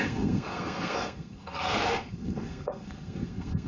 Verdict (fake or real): fake